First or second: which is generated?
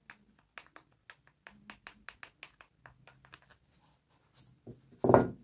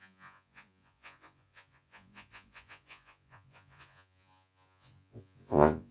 second